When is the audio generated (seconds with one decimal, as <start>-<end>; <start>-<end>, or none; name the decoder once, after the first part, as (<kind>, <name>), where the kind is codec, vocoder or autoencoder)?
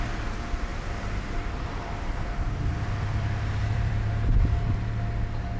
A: 0.7-4.1 (vocoder, BigVGAN v2)